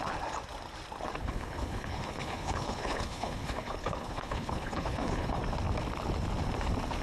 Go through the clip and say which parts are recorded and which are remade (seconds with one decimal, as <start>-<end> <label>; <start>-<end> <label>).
0.0-1.2 recorded; 1.2-5.4 remade; 5.4-7.0 recorded